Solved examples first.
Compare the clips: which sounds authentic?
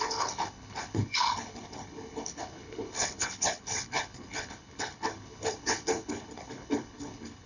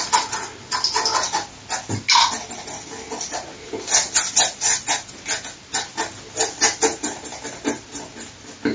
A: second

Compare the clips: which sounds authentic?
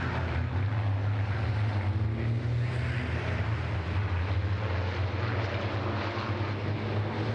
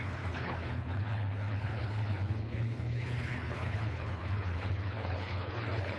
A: first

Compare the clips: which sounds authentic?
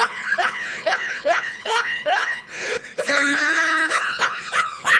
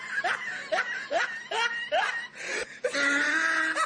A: second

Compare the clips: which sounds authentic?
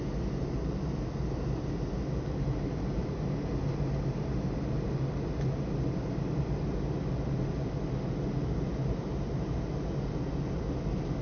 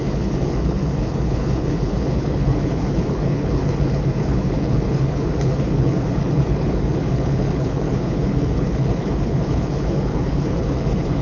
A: first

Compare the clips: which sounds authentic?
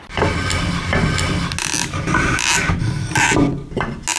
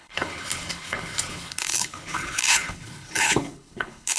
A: first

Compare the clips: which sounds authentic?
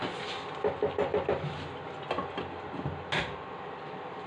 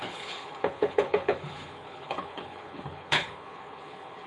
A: first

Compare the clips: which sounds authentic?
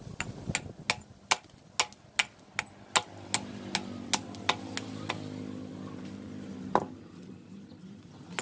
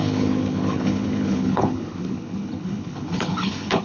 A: first